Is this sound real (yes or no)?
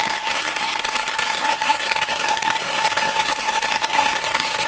no